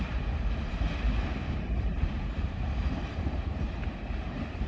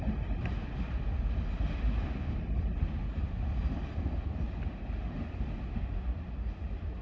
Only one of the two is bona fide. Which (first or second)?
second